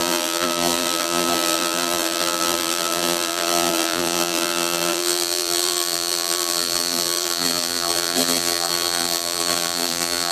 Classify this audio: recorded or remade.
remade